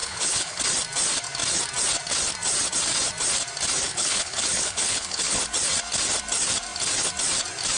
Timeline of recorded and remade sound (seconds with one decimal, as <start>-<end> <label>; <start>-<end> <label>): 0.0-0.6 remade; 0.6-3.9 recorded; 3.9-5.4 remade; 5.4-7.8 recorded